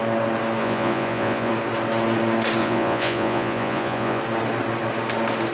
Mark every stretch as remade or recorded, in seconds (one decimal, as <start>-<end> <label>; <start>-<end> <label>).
0.0-0.6 recorded; 0.6-1.5 remade; 1.5-2.6 recorded; 2.6-4.2 remade; 4.2-5.5 recorded